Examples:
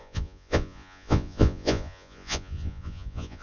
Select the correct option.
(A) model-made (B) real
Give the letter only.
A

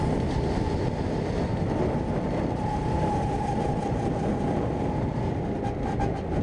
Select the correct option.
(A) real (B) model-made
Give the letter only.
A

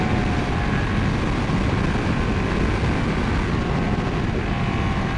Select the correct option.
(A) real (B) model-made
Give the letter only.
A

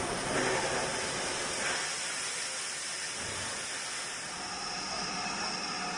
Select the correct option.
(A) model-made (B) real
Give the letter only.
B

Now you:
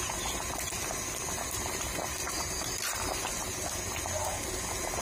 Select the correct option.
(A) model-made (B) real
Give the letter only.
B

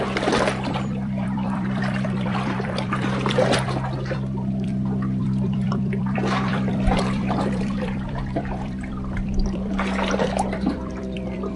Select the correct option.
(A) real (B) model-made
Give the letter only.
B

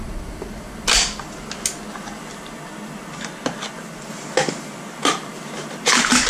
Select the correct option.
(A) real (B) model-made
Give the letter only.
A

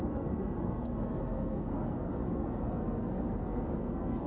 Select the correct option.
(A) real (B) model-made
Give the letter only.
B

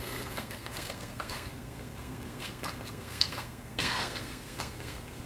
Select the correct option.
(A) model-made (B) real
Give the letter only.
A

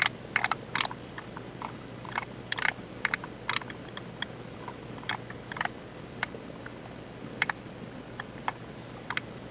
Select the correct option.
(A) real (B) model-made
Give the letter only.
A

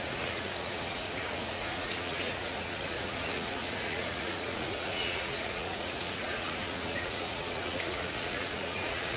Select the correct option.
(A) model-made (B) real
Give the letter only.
A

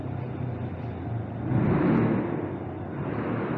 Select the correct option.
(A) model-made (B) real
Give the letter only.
B